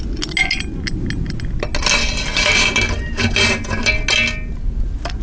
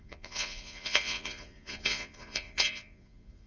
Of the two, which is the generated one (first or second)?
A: second